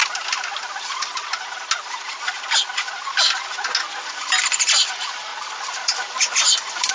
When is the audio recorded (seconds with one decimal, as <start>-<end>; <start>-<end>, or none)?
0.0-4.1